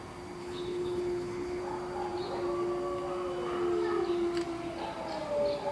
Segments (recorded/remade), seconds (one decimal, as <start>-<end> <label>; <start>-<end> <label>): 0.0-0.4 recorded; 0.4-1.6 remade; 1.6-5.7 recorded